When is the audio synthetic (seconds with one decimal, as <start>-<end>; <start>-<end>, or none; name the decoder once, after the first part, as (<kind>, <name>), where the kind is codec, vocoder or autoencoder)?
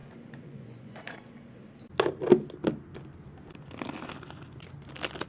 0.0-1.3 (vocoder, Vocos)